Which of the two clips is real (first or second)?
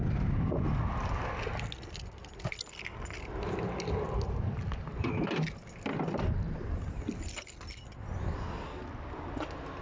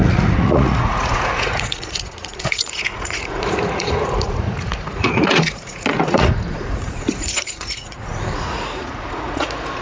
first